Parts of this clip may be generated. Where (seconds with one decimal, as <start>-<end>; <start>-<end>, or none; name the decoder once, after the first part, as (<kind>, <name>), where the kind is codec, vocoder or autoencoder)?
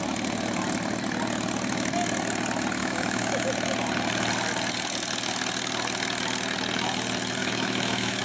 2.8-3.5 (autoencoder, DAC-VAE); 7.4-8.2